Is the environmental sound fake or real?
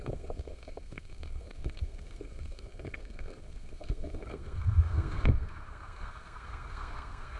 fake